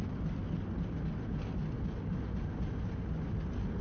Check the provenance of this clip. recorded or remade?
recorded